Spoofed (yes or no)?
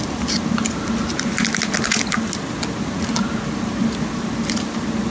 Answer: no